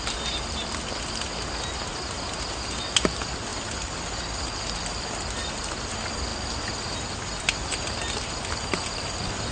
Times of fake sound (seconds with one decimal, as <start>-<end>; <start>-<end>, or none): none